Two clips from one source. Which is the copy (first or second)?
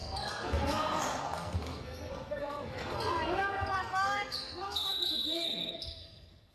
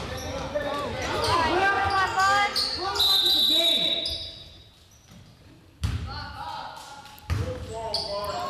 first